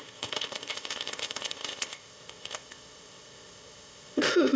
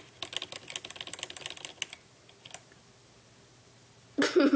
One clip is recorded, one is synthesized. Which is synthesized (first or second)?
first